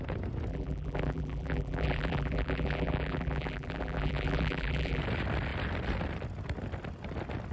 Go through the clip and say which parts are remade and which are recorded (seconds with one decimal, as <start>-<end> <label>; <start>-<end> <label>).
0.0-0.5 recorded; 0.5-5.0 remade; 5.0-7.5 recorded